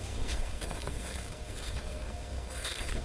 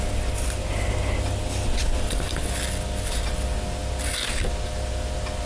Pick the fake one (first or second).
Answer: first